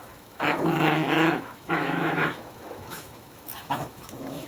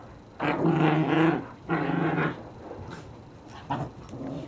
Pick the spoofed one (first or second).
first